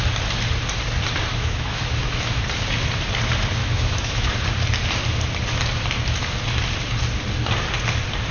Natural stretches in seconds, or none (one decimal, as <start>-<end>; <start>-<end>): 0.0-1.3; 2.4-3.6; 4.3-8.3